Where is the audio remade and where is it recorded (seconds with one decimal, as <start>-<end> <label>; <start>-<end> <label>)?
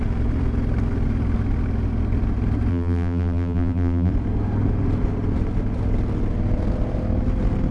0.0-2.7 recorded; 2.7-4.1 remade; 4.1-7.7 recorded